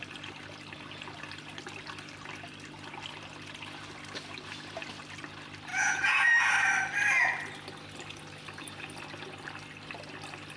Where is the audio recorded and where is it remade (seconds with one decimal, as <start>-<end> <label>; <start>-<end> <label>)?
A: 0.0-5.7 recorded; 5.7-6.5 remade; 6.5-10.6 recorded